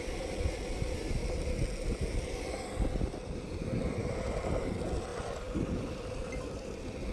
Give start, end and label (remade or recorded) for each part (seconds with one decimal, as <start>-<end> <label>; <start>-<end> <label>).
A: 0.0-7.1 recorded